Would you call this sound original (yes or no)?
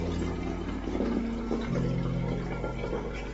yes